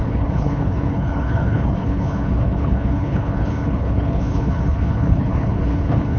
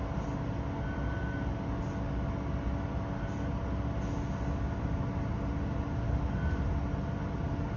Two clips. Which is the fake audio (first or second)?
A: first